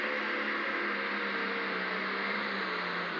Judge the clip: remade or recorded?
recorded